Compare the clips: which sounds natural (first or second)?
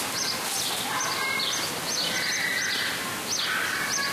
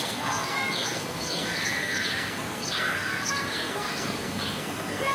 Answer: first